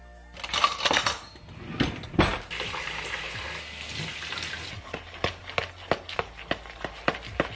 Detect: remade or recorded recorded